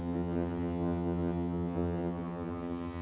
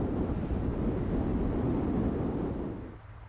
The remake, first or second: first